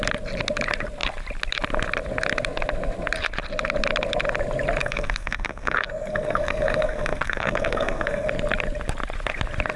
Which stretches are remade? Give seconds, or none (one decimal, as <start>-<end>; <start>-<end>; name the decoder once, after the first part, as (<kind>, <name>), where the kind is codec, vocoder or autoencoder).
4.8-8.3 (codec, SNAC)